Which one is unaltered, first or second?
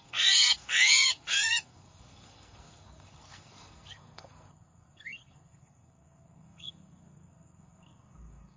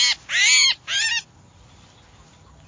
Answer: second